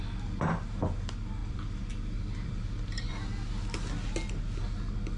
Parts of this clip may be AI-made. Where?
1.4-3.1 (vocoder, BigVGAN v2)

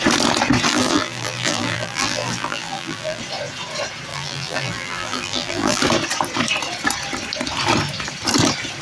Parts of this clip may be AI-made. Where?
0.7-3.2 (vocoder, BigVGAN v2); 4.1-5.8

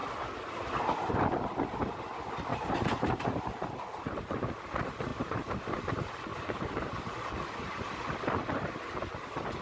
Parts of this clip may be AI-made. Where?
2.5-4.5 (vocoder, BigVGAN v2); 5.1-5.6; 6.3-7.0

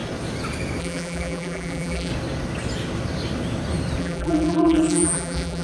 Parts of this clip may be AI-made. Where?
0.8-2.1 (vocoder, BigVGAN v2); 4.0-5.6

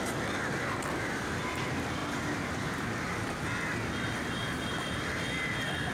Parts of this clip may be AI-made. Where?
none

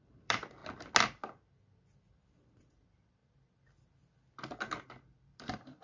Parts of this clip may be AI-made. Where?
0.0-0.6 (vocoder, BigVGAN v2); 2.5-3.2; 5.2-5.8

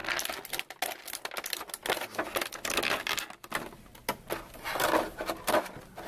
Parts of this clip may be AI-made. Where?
none